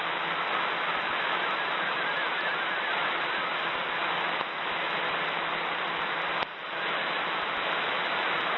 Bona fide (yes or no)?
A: yes